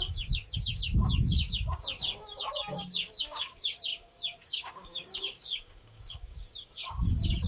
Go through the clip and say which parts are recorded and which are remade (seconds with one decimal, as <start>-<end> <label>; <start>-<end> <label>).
0.0-7.5 remade